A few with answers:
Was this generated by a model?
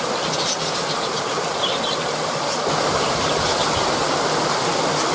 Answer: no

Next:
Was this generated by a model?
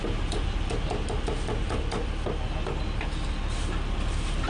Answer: no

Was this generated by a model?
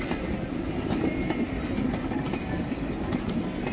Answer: no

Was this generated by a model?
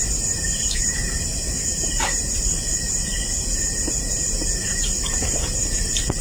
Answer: yes